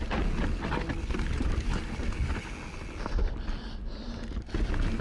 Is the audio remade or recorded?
recorded